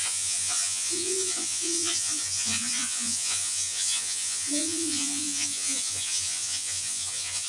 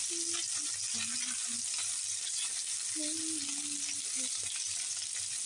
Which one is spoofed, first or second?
first